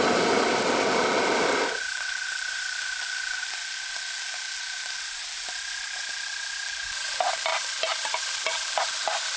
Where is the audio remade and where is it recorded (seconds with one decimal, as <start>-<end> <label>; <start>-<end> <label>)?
0.0-7.5 recorded; 7.5-8.2 remade; 8.2-9.4 recorded

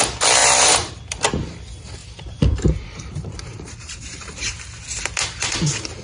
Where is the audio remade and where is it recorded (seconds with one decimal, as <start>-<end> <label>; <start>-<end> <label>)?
0.0-0.4 recorded; 0.4-0.9 remade; 0.9-2.0 recorded; 2.0-4.6 remade; 4.6-6.0 recorded